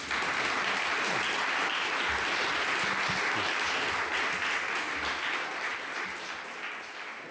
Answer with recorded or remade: recorded